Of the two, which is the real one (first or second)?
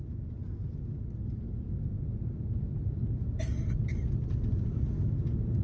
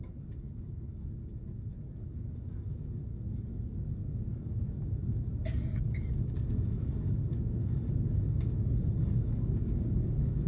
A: first